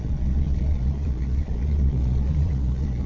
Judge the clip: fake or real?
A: fake